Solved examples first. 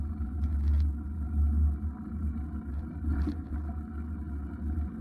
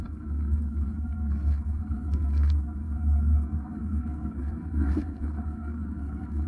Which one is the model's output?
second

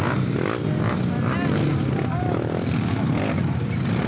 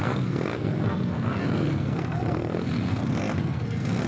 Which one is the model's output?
second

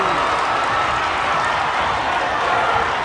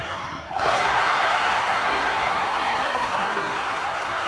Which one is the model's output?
second